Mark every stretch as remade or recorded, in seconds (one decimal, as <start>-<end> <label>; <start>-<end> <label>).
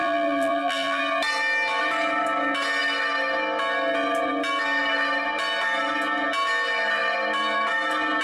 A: 0.0-1.0 remade; 1.0-8.2 recorded